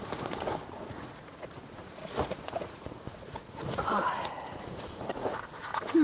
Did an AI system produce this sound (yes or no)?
yes